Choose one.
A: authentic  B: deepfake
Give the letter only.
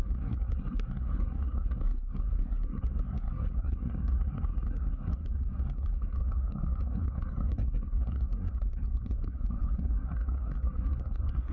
B